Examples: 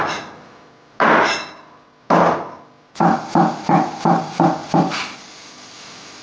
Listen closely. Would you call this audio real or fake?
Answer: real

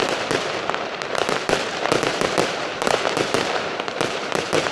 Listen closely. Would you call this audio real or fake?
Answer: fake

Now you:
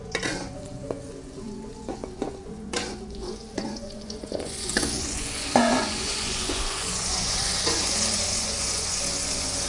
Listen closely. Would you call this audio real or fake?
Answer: fake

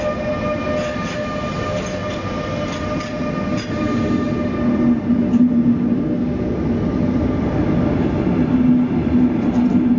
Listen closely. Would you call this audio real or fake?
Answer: real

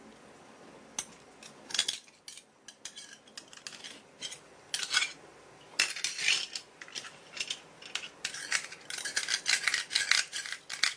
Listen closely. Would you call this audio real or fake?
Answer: real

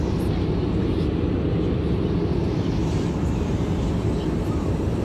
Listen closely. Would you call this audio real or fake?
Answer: real